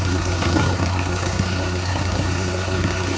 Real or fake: fake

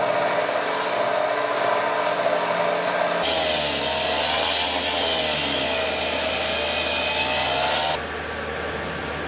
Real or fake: real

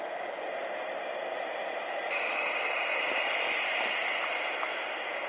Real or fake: real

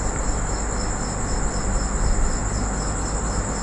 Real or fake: real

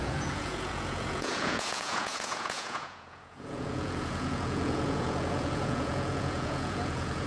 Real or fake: fake